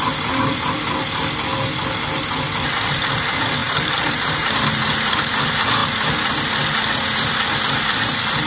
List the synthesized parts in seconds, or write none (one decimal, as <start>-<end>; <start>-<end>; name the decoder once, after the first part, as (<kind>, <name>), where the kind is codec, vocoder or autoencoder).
3.6-4.5 (vocoder, BigVGAN v2)